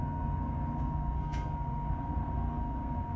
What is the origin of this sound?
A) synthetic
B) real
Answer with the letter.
A